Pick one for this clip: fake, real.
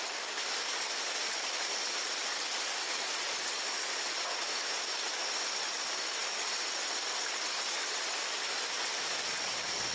real